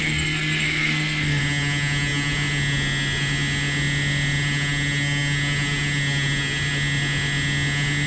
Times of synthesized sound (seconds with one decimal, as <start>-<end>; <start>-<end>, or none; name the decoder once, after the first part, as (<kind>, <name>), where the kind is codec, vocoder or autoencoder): 0.0-1.4 (codec, SNAC)